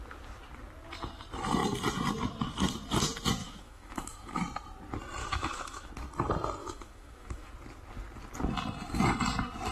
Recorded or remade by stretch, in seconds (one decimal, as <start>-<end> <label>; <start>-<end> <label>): 0.0-3.4 recorded; 3.4-4.4 remade; 4.4-5.2 recorded; 5.2-5.9 remade; 5.9-6.6 recorded; 6.6-7.5 remade; 7.5-9.7 recorded